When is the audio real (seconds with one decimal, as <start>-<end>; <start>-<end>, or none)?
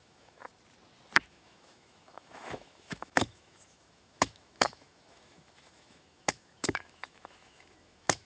0.5-1.3